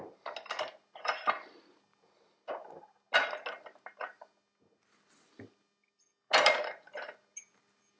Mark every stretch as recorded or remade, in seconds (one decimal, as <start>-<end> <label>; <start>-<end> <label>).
0.0-8.0 recorded